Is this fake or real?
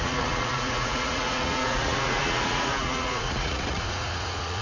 fake